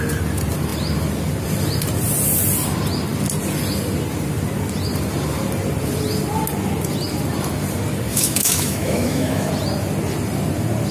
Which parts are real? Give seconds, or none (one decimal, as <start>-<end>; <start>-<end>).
0.0-8.1; 9.5-10.9